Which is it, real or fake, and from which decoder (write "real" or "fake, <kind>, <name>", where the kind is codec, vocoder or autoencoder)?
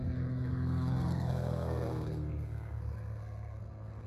fake, codec, SNAC